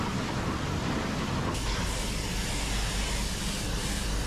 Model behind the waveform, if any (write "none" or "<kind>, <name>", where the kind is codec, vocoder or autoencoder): none